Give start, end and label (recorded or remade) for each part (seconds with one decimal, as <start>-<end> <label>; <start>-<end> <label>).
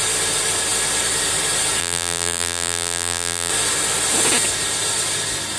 0.0-1.8 recorded; 1.8-3.5 remade; 3.5-5.6 recorded